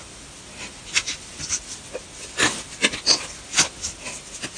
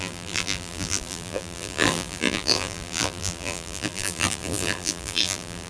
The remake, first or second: second